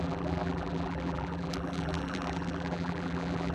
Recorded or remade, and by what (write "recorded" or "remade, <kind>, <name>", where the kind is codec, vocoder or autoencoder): remade, vocoder, BigVGAN v2